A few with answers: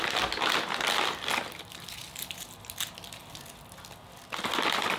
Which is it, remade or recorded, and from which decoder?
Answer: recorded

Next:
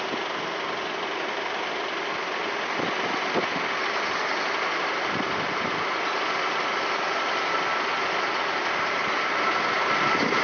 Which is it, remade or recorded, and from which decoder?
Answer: recorded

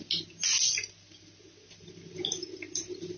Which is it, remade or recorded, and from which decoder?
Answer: recorded